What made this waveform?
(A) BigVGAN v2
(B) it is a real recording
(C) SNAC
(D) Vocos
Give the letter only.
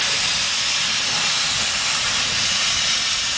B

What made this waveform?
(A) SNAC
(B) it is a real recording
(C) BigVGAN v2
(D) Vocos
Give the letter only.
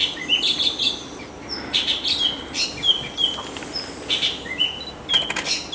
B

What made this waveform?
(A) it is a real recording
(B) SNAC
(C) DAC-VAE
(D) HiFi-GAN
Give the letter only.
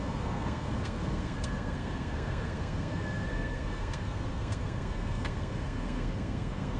B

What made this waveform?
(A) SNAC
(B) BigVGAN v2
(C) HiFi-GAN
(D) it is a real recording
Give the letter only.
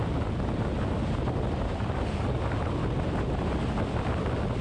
D